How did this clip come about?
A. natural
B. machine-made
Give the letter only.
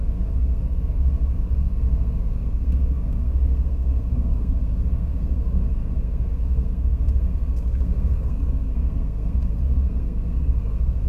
B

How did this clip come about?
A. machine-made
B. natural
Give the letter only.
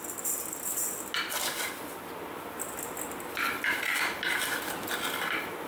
B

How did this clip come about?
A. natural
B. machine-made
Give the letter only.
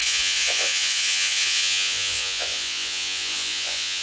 B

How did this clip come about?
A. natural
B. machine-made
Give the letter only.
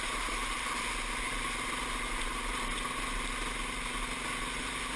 A